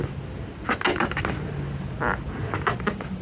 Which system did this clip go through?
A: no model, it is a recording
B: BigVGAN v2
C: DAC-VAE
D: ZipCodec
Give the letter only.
A